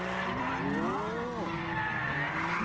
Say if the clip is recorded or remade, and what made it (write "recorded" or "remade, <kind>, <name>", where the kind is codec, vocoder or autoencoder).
recorded